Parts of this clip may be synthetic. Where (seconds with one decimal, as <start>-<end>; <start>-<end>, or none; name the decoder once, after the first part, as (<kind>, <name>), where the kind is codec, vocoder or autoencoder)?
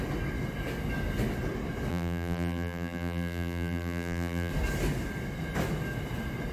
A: 1.9-4.5 (vocoder, BigVGAN v2)